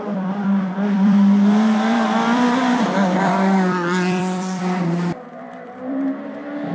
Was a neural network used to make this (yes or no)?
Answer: yes